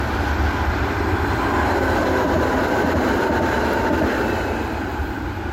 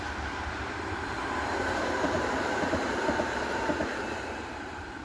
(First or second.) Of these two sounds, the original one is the first